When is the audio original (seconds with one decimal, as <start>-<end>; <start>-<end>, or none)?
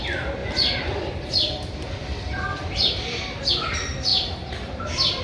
0.0-0.4; 3.5-4.1